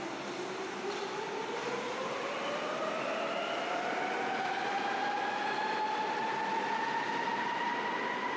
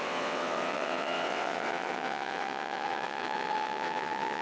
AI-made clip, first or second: second